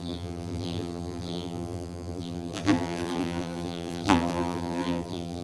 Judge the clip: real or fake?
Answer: fake